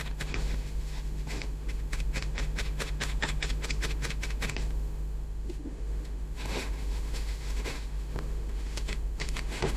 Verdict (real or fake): fake